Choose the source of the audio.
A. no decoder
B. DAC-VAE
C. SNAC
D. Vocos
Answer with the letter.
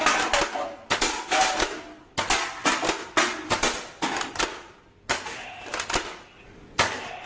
A